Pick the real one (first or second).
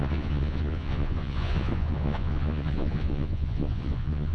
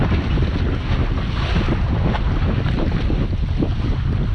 second